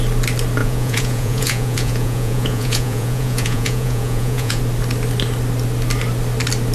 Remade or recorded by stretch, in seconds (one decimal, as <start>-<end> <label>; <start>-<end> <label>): 0.0-0.6 recorded; 0.6-4.6 remade; 4.6-6.7 recorded